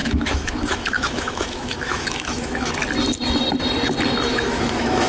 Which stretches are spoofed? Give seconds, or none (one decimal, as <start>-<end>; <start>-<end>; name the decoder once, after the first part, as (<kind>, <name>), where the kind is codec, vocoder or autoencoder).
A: 0.0-2.7 (autoencoder, DAC-VAE); 4.3-5.1